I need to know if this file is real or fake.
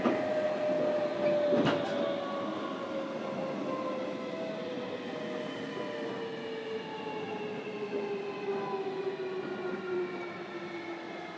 real